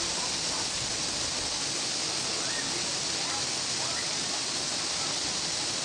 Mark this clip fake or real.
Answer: real